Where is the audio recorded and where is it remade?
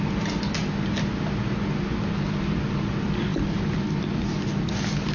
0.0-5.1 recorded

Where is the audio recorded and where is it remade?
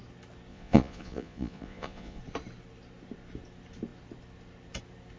0.0-0.5 recorded; 0.5-2.2 remade; 2.2-5.2 recorded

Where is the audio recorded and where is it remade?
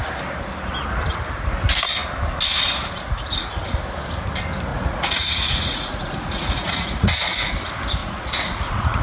0.0-4.7 recorded; 4.7-7.5 remade; 7.5-8.0 recorded; 8.0-9.0 remade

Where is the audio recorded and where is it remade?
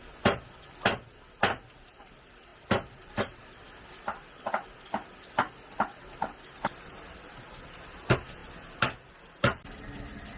0.0-2.5 recorded; 2.5-3.1 remade; 3.1-10.4 recorded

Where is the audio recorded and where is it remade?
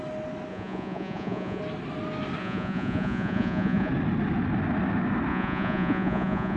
0.0-0.5 recorded; 0.5-1.6 remade; 1.6-2.4 recorded; 2.4-3.9 remade; 3.9-5.3 recorded; 5.3-6.6 remade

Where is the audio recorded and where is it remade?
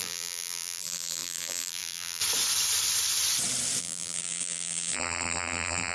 0.0-2.2 remade; 2.2-3.8 recorded; 3.8-5.9 remade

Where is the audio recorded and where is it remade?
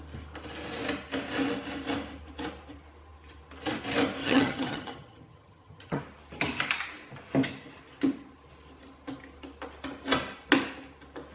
0.0-4.2 recorded; 4.2-6.0 remade; 6.0-11.3 recorded